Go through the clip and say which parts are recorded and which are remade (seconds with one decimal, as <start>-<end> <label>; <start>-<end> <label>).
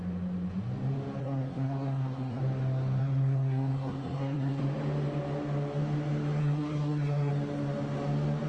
0.0-1.2 recorded; 1.2-2.4 remade; 2.4-3.0 recorded; 3.0-4.6 remade; 4.6-6.4 recorded; 6.4-7.3 remade; 7.3-8.5 recorded